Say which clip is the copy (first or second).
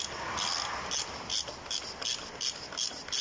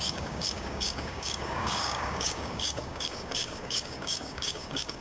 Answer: second